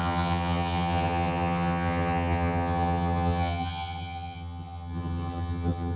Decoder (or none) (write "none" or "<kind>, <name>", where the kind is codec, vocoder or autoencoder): vocoder, HiFi-GAN